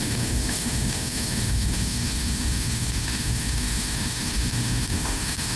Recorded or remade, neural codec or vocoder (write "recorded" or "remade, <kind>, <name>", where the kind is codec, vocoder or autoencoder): remade, autoencoder, DAC-VAE